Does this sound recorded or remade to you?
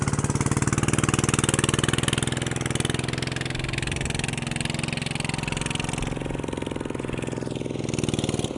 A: recorded